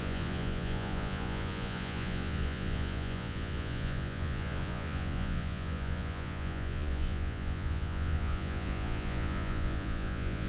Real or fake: fake